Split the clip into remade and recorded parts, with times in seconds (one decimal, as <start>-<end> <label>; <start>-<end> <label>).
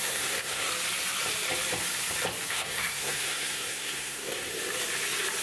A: 0.0-0.7 remade; 0.7-2.5 recorded; 2.5-4.5 remade; 4.5-5.4 recorded